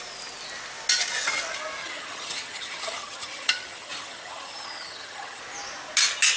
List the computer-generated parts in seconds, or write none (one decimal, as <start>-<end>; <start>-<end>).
1.8-5.4